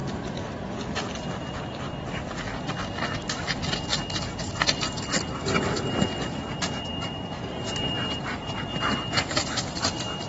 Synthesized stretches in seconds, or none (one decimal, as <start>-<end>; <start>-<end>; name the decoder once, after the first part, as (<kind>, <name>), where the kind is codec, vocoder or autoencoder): 6.9-10.3 (vocoder, BigVGAN v2)